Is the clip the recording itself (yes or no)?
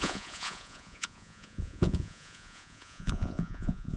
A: no